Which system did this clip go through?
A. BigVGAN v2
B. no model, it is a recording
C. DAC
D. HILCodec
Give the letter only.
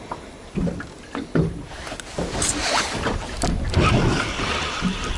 B